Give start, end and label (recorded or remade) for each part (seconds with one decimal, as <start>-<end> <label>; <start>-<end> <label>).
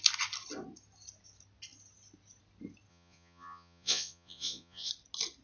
0.0-2.9 recorded; 2.9-4.9 remade; 4.9-5.4 recorded